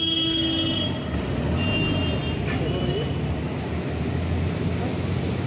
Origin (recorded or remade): recorded